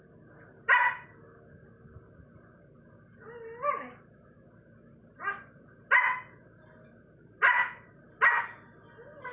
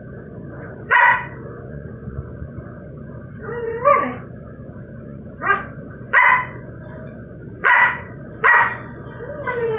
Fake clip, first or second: second